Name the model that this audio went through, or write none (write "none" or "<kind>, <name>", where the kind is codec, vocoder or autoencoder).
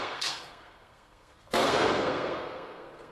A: codec, SNAC